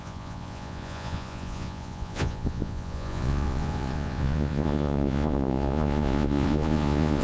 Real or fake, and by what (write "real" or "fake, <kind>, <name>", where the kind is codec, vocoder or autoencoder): fake, vocoder, Vocos